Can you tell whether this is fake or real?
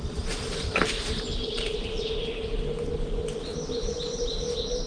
real